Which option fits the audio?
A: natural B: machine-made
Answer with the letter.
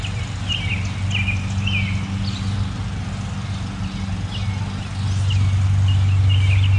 A